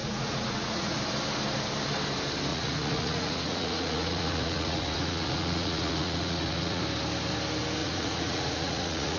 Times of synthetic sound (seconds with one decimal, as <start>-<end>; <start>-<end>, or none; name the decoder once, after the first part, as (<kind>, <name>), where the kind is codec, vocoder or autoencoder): 0.0-1.0 (vocoder, Vocos); 2.5-6.8; 7.8-9.2